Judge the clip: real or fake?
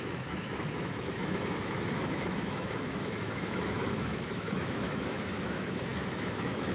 fake